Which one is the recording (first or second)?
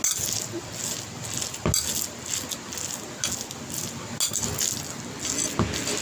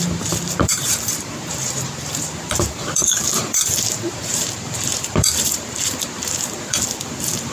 first